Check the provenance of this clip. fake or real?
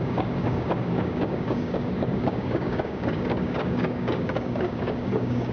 fake